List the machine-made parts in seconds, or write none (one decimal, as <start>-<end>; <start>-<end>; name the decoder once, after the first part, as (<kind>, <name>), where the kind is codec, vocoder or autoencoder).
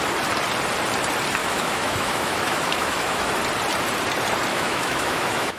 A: 1.4-3.3 (autoencoder, DAC-VAE); 4.5-5.6